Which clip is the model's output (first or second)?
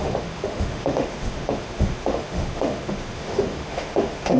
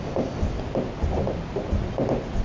first